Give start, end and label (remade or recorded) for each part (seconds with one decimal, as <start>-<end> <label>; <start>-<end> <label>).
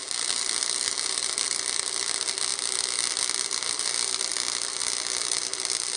0.0-6.0 recorded